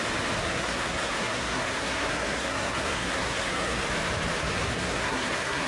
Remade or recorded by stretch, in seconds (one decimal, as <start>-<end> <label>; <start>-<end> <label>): 0.0-0.4 recorded; 0.4-3.8 remade; 3.8-4.4 recorded; 4.4-5.7 remade